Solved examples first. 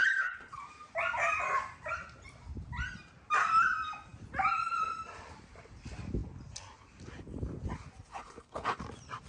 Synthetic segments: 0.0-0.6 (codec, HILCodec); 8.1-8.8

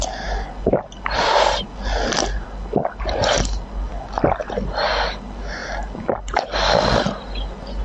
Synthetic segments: none